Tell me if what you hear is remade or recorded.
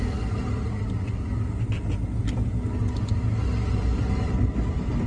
recorded